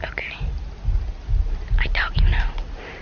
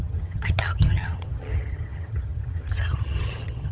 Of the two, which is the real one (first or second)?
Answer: first